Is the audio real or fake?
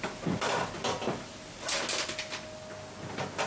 real